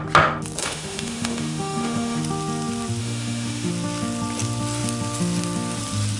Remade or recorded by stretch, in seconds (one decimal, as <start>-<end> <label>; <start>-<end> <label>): 0.0-0.6 recorded; 0.6-2.2 remade; 2.2-3.0 recorded; 3.0-3.7 remade; 3.7-6.2 recorded